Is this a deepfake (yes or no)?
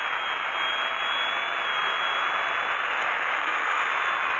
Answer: no